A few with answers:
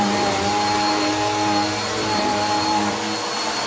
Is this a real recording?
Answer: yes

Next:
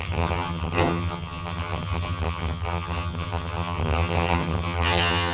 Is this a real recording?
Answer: no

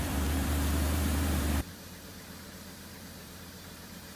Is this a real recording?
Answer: no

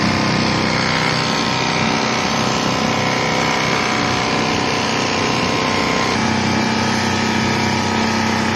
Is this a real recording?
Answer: yes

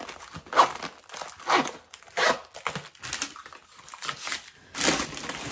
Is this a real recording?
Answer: yes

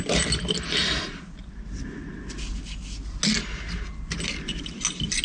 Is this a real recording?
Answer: yes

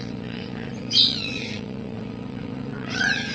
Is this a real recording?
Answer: no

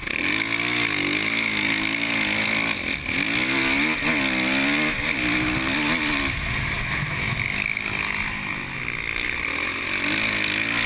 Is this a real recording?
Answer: yes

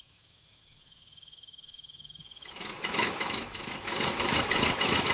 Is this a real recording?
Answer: no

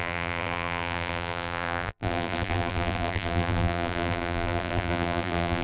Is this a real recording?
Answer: no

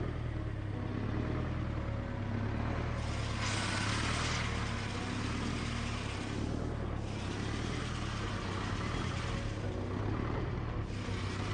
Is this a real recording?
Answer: yes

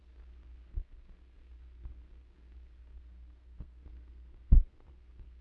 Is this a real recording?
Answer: no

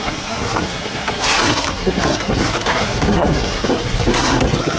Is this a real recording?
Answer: no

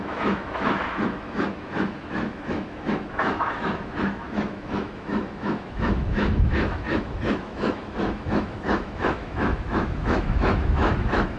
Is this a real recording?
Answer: no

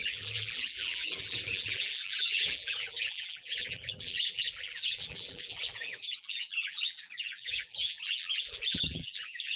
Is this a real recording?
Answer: no